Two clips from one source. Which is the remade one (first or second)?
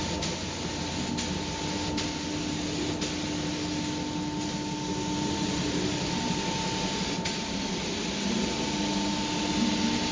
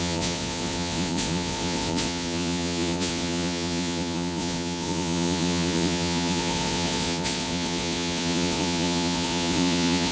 second